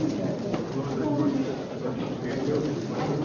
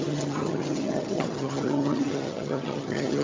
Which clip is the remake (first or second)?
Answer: second